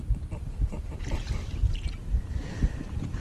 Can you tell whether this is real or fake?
real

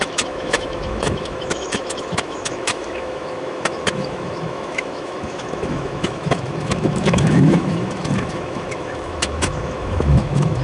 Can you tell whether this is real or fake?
fake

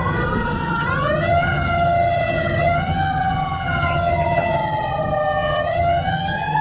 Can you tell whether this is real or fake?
fake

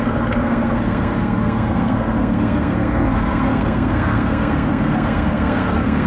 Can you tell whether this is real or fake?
fake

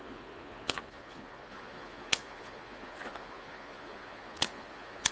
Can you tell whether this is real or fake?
fake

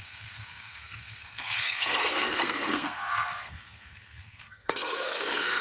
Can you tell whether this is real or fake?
fake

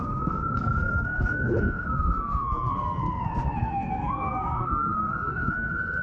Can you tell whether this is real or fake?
fake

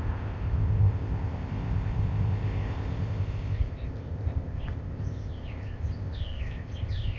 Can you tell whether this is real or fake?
fake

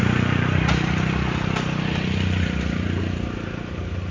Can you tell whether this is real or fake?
real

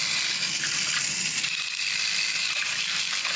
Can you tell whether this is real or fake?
real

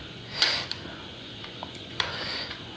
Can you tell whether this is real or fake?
fake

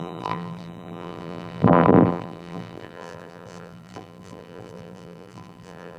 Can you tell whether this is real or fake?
fake